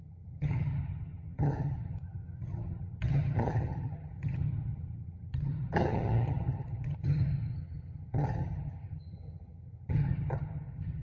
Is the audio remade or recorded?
remade